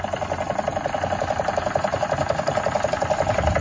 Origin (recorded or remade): recorded